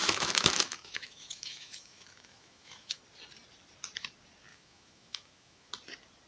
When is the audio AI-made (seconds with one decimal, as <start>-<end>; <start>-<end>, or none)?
0.0-3.0; 4.5-5.7